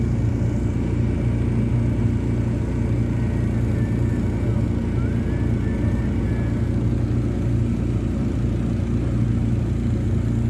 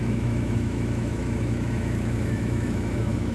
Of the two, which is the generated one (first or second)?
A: second